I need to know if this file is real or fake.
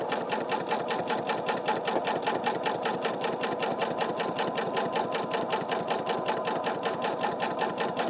real